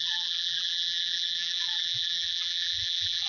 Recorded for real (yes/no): no